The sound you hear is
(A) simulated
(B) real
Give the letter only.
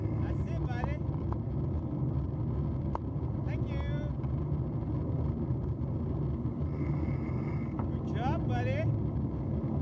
B